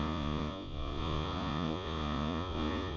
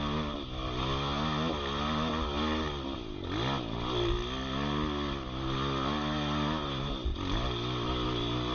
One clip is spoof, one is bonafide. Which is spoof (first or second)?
first